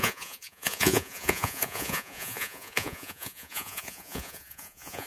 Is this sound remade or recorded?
remade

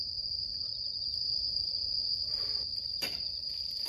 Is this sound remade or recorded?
remade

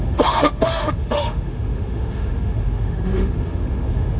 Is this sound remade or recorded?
remade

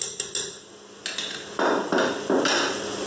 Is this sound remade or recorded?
recorded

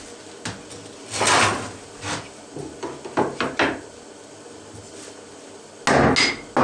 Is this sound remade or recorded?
recorded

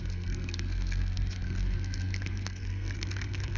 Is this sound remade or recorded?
remade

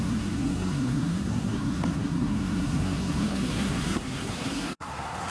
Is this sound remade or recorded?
remade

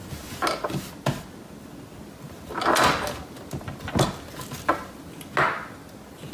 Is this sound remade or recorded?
recorded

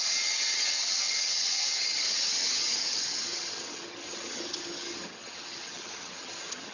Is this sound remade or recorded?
remade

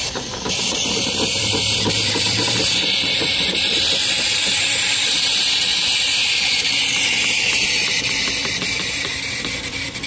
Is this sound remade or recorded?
remade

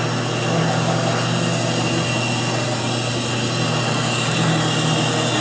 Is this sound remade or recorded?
recorded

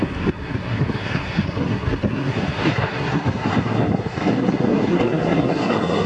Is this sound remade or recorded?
remade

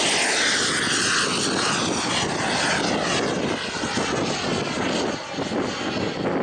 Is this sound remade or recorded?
recorded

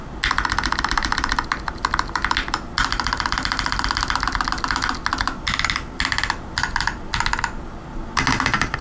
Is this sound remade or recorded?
recorded